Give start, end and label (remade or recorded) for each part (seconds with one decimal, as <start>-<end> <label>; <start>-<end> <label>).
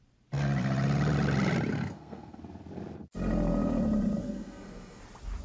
0.0-1.7 recorded; 1.7-2.4 remade; 2.4-4.2 recorded; 4.2-5.0 remade; 5.0-5.4 recorded